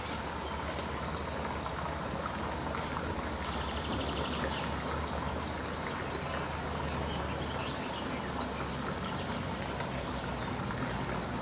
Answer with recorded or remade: recorded